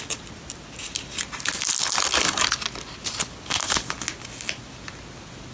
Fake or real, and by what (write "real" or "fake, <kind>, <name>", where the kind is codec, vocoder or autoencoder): real